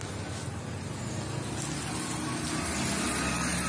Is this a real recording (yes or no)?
yes